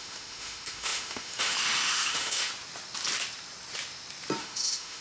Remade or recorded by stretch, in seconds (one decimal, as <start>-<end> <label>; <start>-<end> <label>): 0.0-2.5 remade; 2.5-4.4 recorded; 4.4-5.0 remade